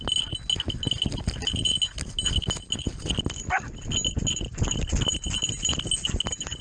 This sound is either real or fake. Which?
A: real